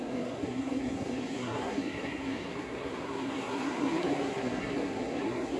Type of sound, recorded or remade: remade